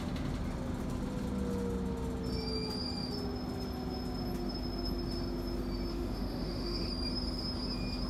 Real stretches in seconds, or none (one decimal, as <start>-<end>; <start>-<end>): 0.0-5.9; 6.9-8.1